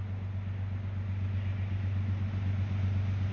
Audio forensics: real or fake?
real